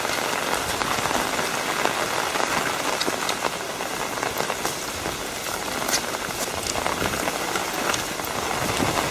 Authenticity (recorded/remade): recorded